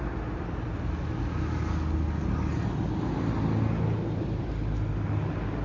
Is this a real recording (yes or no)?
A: yes